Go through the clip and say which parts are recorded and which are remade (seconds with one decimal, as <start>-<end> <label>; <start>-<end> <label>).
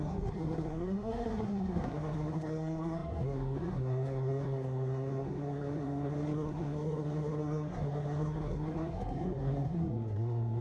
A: 0.0-10.6 remade